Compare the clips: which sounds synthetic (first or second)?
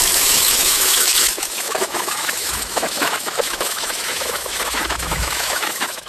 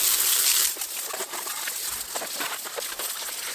first